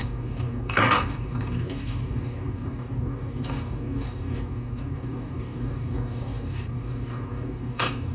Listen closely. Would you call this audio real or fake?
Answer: fake